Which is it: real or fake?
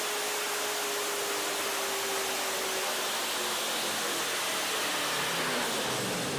real